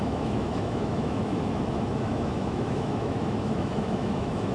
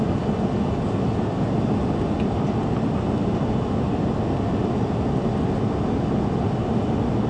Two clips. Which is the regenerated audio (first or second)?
first